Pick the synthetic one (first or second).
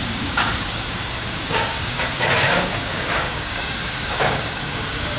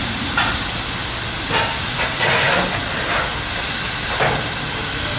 first